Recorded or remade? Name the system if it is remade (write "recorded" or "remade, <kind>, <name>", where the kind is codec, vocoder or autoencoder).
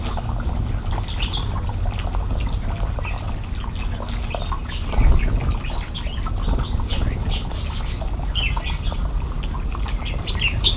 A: recorded